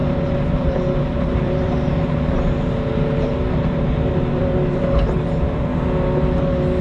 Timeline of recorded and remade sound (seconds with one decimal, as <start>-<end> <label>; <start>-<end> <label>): 0.0-5.7 remade; 5.7-6.8 recorded